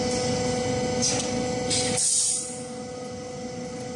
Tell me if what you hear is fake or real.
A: real